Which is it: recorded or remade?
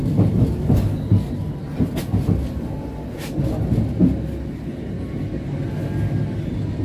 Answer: recorded